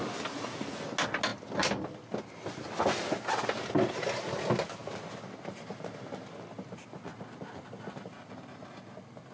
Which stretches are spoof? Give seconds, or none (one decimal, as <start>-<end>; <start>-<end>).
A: none